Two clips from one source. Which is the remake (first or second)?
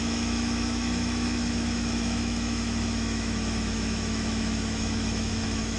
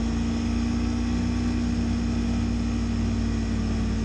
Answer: first